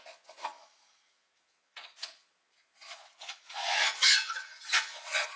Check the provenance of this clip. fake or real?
fake